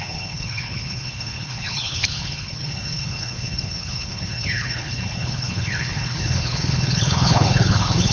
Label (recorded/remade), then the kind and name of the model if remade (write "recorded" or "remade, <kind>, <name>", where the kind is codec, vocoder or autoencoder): remade, codec, HILCodec